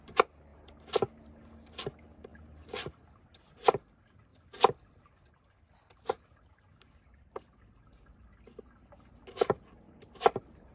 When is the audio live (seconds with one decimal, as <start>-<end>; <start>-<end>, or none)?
0.0-10.7